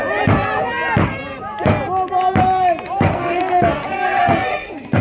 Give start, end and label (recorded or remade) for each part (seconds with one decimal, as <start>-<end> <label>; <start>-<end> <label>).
0.0-3.0 recorded; 3.0-5.0 remade